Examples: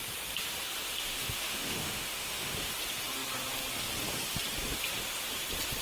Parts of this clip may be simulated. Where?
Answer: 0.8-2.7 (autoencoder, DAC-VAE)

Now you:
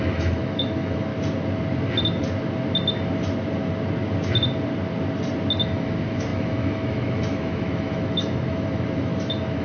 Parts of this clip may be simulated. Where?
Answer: 0.0-1.1 (autoencoder, DAC-VAE); 5.6-9.6

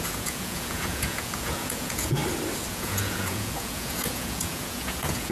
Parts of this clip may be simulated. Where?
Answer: 0.0-2.2 (vocoder, Vocos); 2.7-5.3

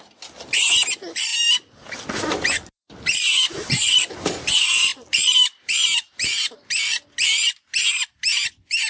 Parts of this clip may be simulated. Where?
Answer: none

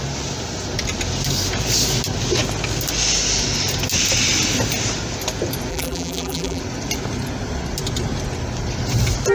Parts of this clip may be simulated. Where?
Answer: 5.7-6.6 (vocoder, BigVGAN v2)